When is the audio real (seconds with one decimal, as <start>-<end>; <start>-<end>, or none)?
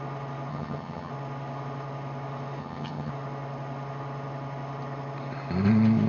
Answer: 0.0-0.5; 1.1-2.6; 3.1-6.1